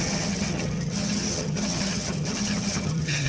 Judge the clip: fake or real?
fake